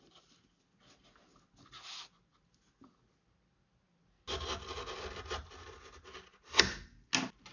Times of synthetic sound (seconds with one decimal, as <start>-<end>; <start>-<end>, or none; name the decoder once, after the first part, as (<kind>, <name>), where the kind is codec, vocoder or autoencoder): none